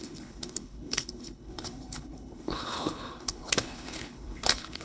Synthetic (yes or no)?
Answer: yes